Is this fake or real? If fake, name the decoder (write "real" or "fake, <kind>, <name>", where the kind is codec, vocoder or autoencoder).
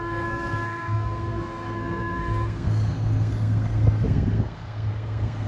fake, codec, SNAC